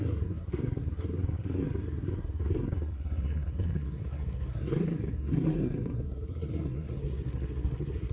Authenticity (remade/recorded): remade